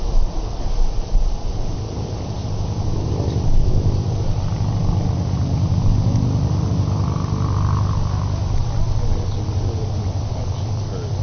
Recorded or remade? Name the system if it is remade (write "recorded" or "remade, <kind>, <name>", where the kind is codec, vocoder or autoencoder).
recorded